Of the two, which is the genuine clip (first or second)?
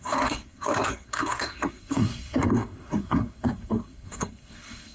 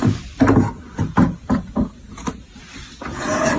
second